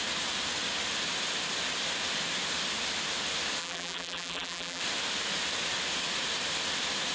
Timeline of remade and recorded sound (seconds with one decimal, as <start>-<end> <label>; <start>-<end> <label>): 0.0-3.6 recorded; 3.6-4.8 remade; 4.8-7.1 recorded